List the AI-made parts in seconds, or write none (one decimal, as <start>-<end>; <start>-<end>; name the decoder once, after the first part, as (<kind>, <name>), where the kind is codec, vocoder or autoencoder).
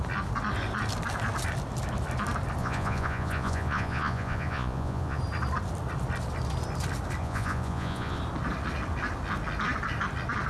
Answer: 2.6-5.2 (vocoder, Vocos); 7.2-8.2